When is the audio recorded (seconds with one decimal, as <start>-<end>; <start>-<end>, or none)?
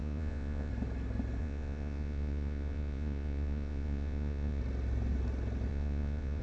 0.7-1.4; 4.6-5.7